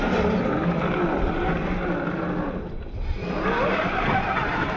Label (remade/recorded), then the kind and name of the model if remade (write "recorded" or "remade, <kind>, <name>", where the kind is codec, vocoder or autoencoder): recorded